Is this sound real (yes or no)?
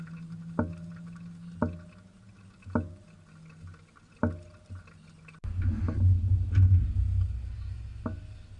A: yes